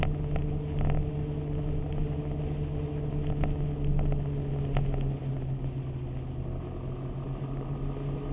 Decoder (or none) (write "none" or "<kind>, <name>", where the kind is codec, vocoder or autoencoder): none